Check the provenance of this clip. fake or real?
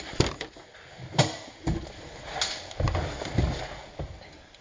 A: real